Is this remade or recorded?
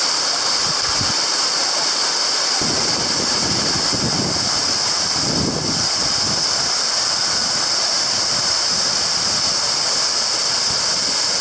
recorded